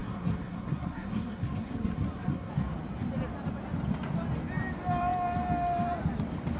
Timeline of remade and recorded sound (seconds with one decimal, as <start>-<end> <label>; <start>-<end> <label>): 0.0-2.5 remade; 2.5-6.6 recorded